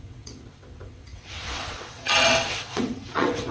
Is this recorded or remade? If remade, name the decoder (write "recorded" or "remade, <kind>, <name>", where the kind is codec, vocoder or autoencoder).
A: remade, vocoder, WaveNeXt